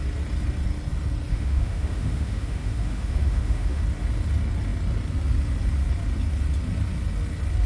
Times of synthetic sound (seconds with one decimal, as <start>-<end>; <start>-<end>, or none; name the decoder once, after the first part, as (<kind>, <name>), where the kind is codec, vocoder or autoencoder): 1.3-3.8 (autoencoder, DAC-VAE)